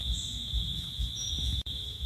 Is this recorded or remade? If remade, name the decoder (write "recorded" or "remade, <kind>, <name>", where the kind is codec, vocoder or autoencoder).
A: remade, autoencoder, DAC-VAE